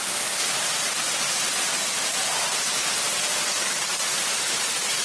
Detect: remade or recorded recorded